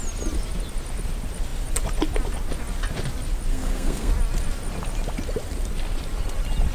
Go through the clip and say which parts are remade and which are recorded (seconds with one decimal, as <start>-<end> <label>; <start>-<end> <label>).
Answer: 0.0-3.5 recorded; 3.5-4.1 remade; 4.1-6.7 recorded